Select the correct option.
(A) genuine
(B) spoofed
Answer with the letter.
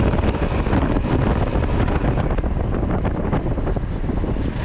A